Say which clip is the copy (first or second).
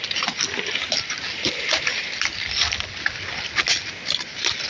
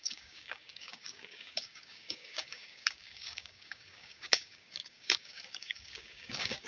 second